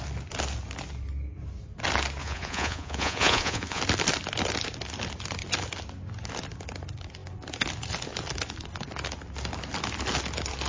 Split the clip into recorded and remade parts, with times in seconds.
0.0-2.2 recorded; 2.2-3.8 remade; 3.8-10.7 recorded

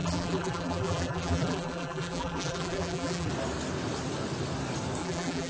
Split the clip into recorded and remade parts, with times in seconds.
0.0-3.3 remade; 3.3-5.0 recorded; 5.0-5.5 remade